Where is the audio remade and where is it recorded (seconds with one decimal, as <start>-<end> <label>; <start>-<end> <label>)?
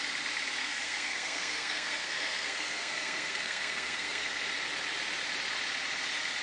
0.0-0.6 recorded; 0.6-4.4 remade; 4.4-6.4 recorded